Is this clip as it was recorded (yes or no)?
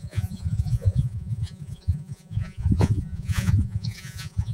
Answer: no